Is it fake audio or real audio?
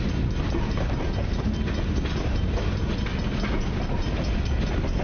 real